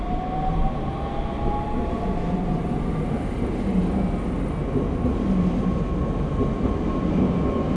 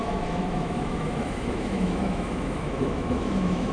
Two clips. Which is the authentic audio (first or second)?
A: first